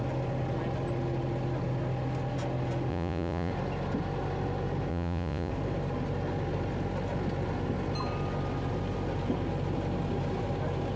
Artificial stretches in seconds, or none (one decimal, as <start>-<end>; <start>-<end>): 2.9-3.5; 4.9-5.5